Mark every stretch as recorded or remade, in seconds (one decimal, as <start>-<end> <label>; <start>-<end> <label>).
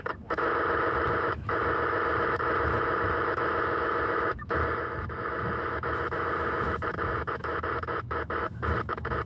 0.0-9.3 remade